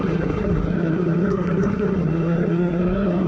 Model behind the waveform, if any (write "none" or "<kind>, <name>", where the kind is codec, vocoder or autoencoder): codec, SNAC